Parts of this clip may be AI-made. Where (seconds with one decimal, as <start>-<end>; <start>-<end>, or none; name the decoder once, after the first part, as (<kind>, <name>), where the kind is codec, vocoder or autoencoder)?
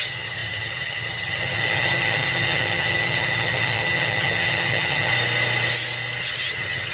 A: 0.0-5.1 (vocoder, HiFi-GAN); 6.2-6.9